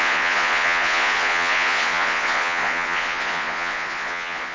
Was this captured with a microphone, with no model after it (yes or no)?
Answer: no